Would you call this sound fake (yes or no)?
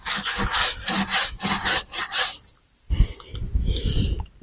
no